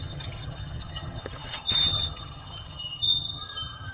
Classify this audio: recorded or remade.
remade